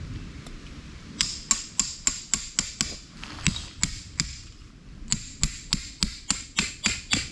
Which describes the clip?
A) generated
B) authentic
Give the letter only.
B